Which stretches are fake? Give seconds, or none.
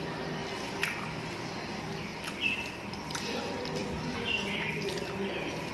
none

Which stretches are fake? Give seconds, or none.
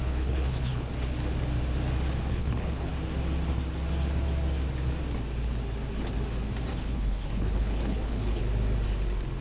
0.0-0.9 (codec, HILCodec); 2.3-2.9; 6.7-8.4